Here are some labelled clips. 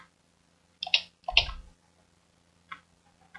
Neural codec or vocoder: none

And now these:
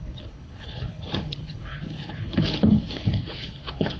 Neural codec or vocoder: codec, HILCodec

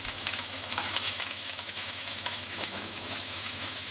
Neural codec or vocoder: autoencoder, DAC-VAE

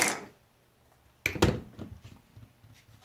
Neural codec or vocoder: none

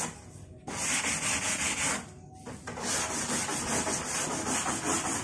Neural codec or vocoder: none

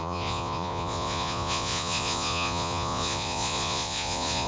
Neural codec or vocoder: vocoder, Vocos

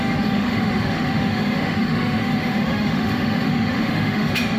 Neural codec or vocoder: autoencoder, DAC-VAE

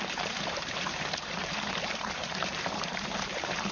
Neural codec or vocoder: vocoder, BigVGAN v2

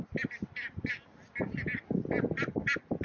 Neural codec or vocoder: none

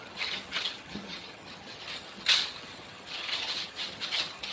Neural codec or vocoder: vocoder, HiFi-GAN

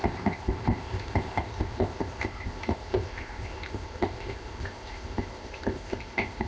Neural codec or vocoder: codec, ZipCodec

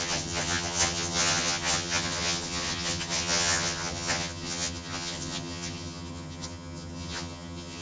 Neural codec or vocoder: vocoder, HiFi-GAN